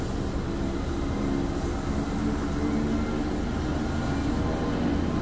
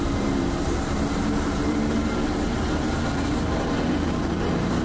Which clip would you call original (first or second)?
first